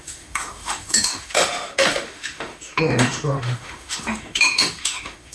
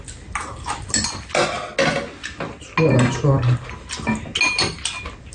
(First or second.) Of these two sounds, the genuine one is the second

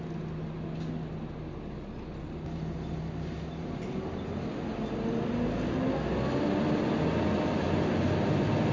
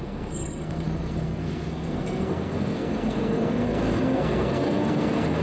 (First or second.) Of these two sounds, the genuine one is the first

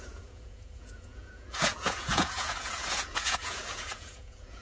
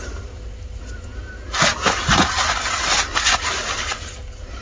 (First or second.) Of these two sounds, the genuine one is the second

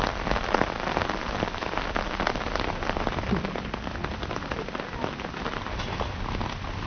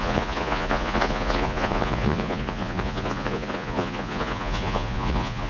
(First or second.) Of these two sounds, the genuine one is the first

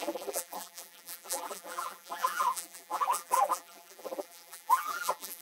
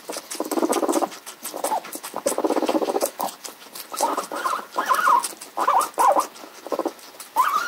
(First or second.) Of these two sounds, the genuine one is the second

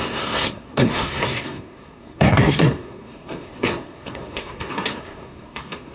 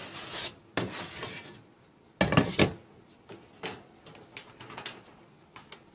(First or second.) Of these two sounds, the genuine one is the second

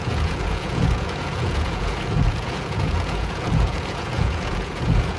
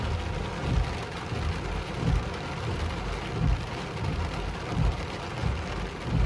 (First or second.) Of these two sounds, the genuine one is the second